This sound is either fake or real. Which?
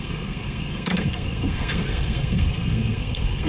fake